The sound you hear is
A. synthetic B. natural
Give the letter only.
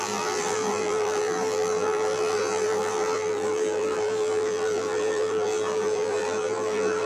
A